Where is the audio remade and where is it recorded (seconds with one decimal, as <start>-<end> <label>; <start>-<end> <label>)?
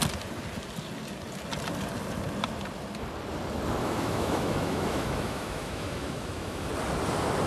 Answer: 0.0-3.8 recorded; 3.8-6.7 remade; 6.7-7.5 recorded